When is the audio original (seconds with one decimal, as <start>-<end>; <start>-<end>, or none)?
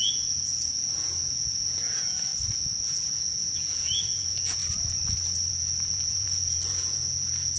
2.3-2.8; 4.6-5.5